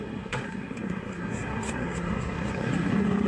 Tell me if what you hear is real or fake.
fake